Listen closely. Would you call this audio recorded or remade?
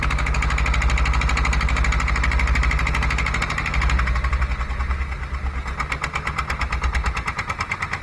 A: recorded